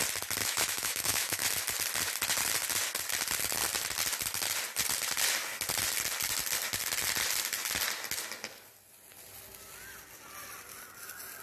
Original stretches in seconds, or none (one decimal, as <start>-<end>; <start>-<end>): 0.0-0.4; 1.4-11.4